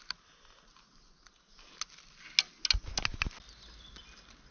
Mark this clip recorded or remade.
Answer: recorded